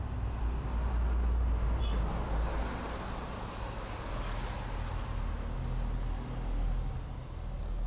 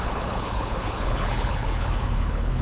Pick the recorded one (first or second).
first